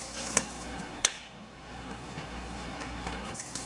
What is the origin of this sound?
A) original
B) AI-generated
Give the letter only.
B